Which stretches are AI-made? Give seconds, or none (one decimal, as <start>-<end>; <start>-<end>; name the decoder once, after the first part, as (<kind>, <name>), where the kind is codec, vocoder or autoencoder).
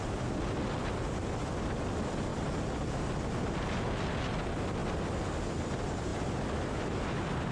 2.3-3.4 (vocoder, BigVGAN v2); 4.8-5.6